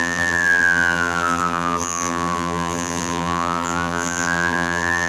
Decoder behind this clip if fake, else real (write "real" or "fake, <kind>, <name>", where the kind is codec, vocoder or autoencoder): fake, vocoder, BigVGAN v2